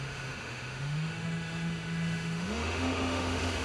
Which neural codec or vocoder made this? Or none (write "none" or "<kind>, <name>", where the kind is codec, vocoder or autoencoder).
autoencoder, DAC-VAE